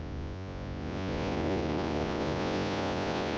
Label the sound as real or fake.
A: fake